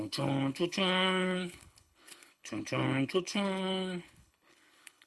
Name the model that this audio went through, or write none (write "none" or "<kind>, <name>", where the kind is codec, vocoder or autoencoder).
codec, HILCodec